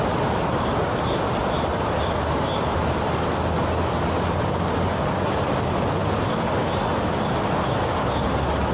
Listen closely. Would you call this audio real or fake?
real